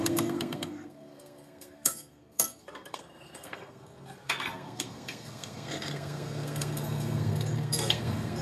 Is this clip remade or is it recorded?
remade